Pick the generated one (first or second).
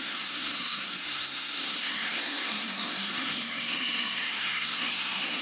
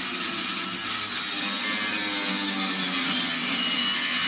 first